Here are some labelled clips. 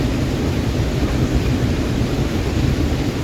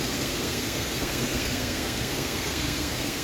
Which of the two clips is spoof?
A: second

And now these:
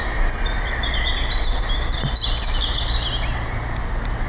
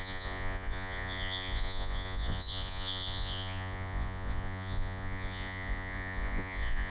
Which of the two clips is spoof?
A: second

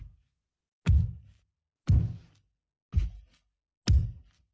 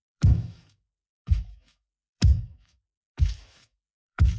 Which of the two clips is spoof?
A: second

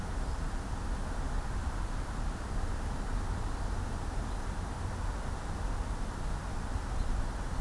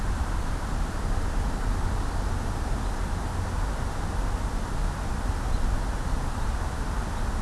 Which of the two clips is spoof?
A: first